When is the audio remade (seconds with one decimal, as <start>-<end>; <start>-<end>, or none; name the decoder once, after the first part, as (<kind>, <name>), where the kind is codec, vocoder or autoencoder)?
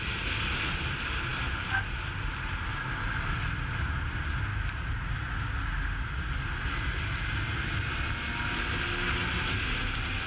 none